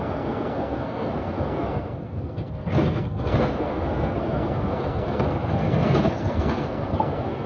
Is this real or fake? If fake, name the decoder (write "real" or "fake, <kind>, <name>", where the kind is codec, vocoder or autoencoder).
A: fake, codec, SNAC